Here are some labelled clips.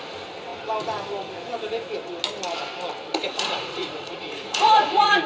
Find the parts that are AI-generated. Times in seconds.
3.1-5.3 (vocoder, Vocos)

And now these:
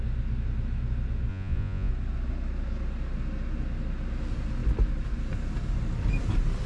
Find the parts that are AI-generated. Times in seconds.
1.3-1.9 (vocoder, Vocos)

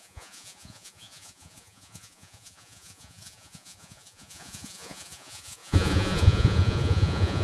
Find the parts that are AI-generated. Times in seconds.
0.0-7.4 (vocoder, Vocos)

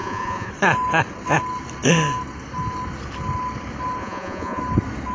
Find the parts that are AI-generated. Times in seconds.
0.0-0.5 (vocoder, Vocos); 4.0-4.6

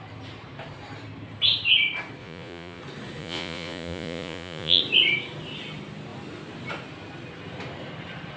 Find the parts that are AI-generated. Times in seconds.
2.2-2.8 (vocoder, Vocos); 3.2-4.8